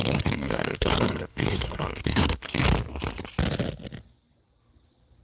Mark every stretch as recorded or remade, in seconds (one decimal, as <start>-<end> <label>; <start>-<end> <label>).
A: 0.0-2.6 remade; 2.6-5.2 recorded

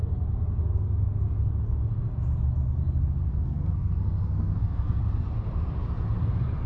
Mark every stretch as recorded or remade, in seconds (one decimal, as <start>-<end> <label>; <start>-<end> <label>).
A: 0.0-3.3 recorded; 3.3-5.0 remade; 5.0-6.7 recorded

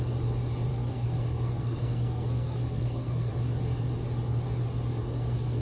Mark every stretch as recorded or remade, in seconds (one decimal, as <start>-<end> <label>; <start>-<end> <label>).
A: 0.0-0.7 recorded; 0.7-3.3 remade; 3.3-5.0 recorded; 5.0-5.6 remade